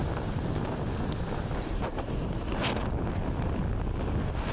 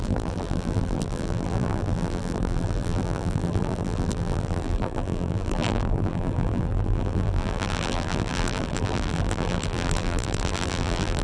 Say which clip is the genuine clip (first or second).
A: first